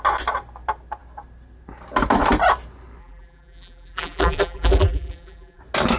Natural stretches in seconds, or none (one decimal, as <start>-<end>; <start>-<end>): 0.0-3.0; 5.6-6.0